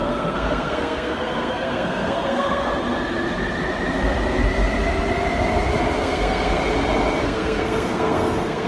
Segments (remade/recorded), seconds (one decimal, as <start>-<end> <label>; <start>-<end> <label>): 0.0-2.7 remade; 2.7-6.0 recorded; 6.0-6.6 remade; 6.6-7.2 recorded; 7.2-8.7 remade